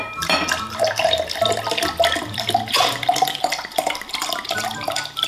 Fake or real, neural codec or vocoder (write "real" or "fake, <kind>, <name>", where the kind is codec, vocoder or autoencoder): fake, vocoder, BigVGAN v2